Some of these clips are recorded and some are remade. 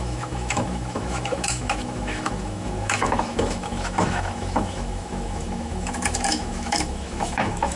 remade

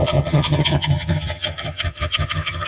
remade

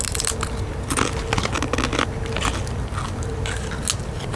recorded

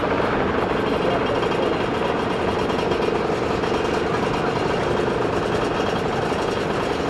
recorded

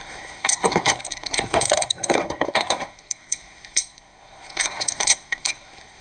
remade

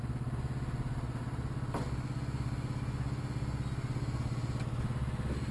recorded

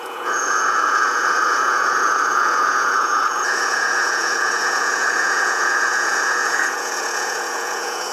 remade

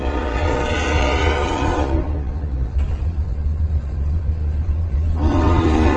remade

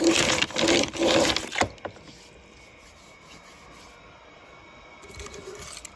recorded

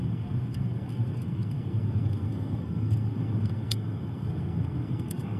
remade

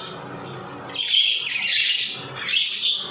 recorded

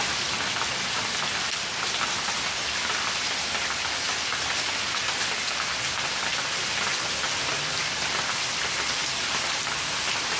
recorded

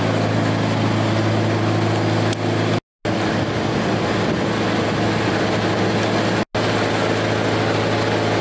recorded